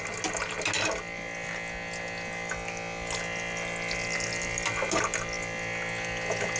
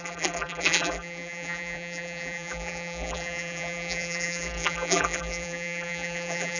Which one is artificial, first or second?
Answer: second